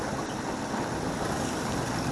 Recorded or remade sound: recorded